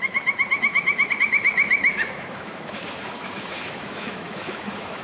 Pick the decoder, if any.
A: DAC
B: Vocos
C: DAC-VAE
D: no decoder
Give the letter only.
C